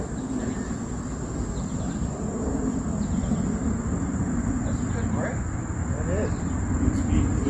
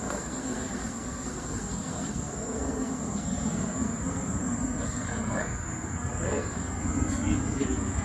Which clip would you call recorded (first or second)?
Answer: first